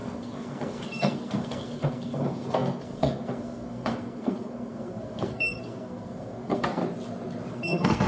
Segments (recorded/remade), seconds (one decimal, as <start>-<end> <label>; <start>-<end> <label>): 0.0-6.8 remade; 6.8-7.5 recorded; 7.5-8.1 remade